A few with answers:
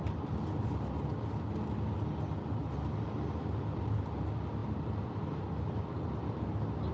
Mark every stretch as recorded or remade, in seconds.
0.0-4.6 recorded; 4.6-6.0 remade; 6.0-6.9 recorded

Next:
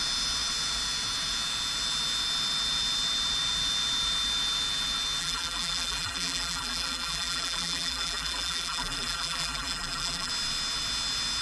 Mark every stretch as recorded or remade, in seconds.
0.0-5.2 recorded; 5.2-10.3 remade; 10.3-11.4 recorded